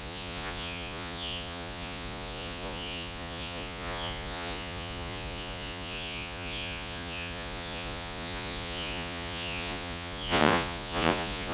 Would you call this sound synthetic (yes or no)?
yes